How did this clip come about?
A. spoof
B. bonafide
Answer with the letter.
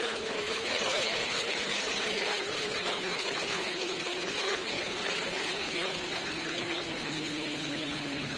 A